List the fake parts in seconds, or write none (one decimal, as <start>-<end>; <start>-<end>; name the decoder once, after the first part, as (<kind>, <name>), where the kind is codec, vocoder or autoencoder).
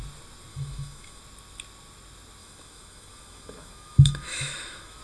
0.5-1.2 (autoencoder, DAC-VAE); 2.4-5.0